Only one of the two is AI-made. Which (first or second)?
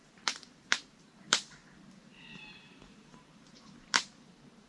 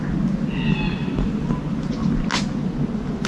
first